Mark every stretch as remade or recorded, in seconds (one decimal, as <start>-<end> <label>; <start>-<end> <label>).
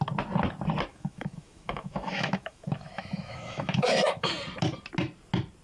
0.0-0.9 recorded; 0.9-4.3 remade; 4.3-5.6 recorded